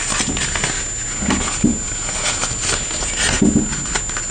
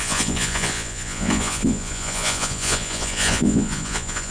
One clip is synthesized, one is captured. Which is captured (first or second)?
first